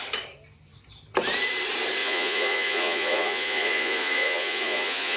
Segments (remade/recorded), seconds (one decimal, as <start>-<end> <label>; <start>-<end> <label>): 0.0-2.0 recorded; 2.0-5.2 remade